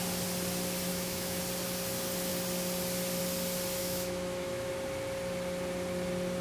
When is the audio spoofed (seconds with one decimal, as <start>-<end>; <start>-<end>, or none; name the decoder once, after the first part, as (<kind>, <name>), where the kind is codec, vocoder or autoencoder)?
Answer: 0.9-1.4 (autoencoder, DAC-VAE); 3.8-4.7